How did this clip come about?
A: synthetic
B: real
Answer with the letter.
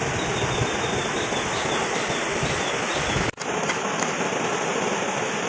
B